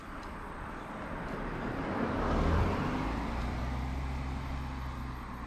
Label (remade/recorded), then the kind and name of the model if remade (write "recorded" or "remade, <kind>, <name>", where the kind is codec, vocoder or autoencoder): recorded